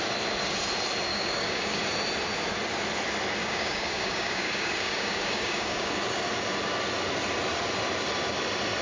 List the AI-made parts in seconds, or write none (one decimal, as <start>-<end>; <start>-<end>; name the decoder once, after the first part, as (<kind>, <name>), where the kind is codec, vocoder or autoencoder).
1.1-1.8 (codec, DAC); 3.4-5.9